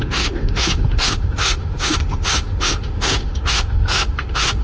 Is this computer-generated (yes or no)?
yes